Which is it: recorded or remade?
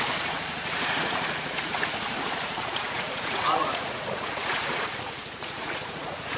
remade